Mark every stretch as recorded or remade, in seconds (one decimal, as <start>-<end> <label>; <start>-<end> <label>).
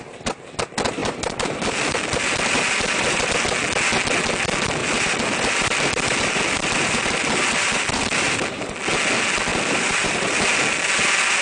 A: 0.0-1.0 recorded; 1.0-3.3 remade; 3.3-4.8 recorded; 4.8-8.7 remade; 8.7-9.5 recorded; 9.5-10.4 remade; 10.4-11.4 recorded